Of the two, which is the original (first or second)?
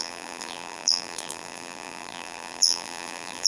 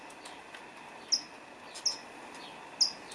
second